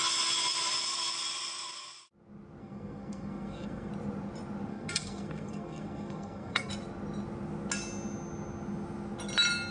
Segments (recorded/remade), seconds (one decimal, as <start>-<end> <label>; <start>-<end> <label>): 0.0-2.6 recorded; 2.6-3.9 remade; 3.9-4.7 recorded; 4.7-6.7 remade; 6.7-9.7 recorded